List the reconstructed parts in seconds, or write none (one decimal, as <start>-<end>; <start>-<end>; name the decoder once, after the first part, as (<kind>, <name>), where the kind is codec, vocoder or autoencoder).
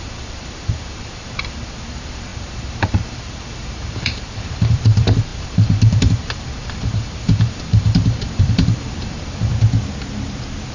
0.0-9.5 (vocoder, BigVGAN v2)